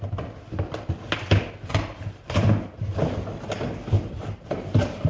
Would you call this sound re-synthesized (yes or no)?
no